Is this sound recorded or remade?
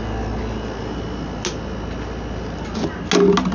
recorded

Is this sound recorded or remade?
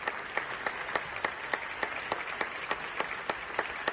recorded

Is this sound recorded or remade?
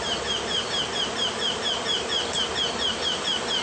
recorded